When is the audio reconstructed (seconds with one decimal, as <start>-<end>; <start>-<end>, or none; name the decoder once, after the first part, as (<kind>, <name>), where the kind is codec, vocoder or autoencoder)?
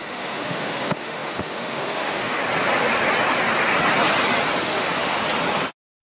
0.0-2.4 (autoencoder, DAC-VAE); 4.6-5.2